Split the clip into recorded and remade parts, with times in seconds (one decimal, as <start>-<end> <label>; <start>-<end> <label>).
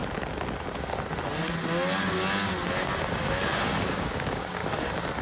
0.0-3.1 recorded; 3.1-4.6 remade; 4.6-5.2 recorded